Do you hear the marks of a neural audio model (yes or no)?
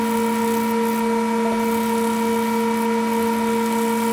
no